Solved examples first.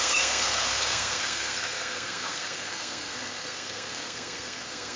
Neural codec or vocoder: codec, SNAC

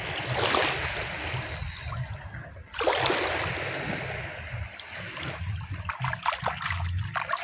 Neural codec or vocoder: none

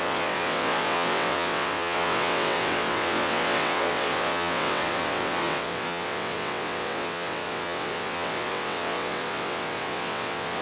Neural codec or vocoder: vocoder, WaveNeXt